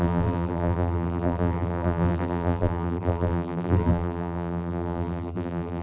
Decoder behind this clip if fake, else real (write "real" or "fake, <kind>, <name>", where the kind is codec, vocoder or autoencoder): fake, vocoder, BigVGAN v2